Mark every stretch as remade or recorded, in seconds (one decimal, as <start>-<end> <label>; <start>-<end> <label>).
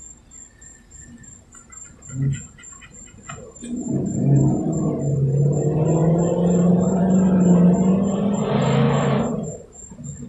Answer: 0.0-10.3 recorded